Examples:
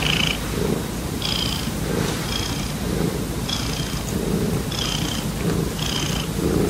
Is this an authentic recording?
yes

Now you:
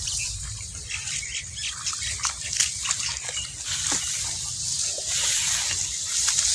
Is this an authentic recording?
yes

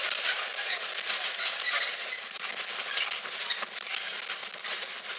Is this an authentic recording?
yes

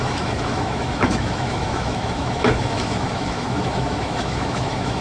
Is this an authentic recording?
no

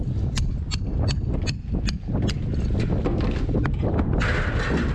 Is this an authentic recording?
yes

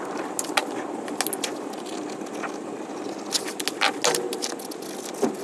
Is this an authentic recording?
yes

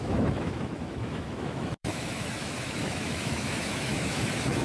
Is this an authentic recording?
no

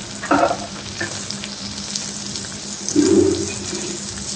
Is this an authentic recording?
yes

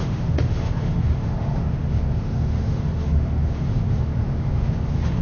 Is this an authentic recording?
no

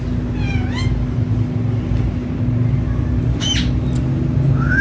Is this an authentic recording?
yes